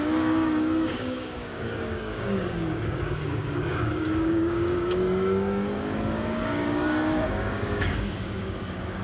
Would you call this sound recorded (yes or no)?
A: no